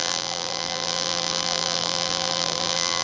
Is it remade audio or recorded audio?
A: remade